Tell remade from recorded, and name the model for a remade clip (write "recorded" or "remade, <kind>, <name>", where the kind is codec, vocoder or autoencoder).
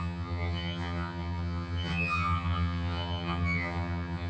remade, vocoder, HiFi-GAN